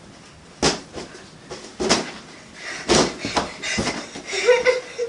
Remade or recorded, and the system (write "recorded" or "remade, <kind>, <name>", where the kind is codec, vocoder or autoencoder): recorded